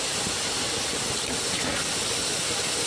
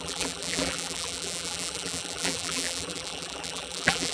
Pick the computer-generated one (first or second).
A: second